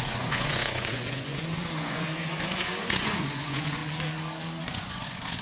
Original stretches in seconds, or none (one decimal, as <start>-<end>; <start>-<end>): 3.8-4.6